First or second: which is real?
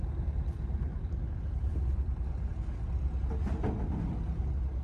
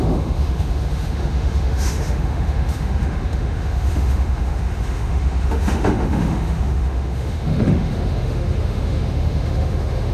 first